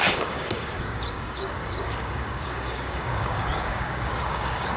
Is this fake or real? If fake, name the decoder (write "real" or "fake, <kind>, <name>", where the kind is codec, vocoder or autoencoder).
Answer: fake, codec, DAC